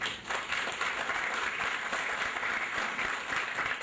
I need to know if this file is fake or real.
real